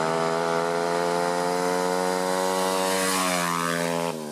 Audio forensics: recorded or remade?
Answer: recorded